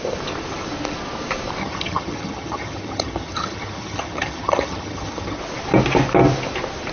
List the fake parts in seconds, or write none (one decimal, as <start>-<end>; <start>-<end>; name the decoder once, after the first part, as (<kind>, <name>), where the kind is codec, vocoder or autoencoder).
1.6-5.4 (vocoder, HiFi-GAN)